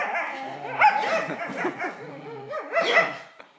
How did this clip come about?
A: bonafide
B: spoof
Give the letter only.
A